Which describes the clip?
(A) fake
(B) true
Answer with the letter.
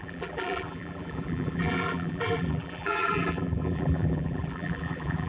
A